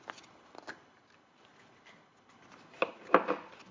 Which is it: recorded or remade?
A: recorded